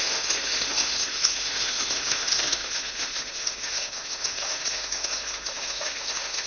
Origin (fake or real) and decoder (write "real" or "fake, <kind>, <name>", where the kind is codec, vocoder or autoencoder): fake, autoencoder, DAC-VAE